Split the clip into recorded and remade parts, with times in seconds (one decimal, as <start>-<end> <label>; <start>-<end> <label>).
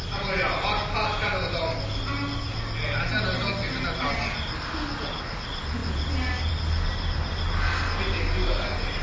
0.0-9.0 recorded